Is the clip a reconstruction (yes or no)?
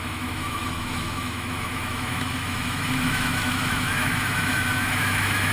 yes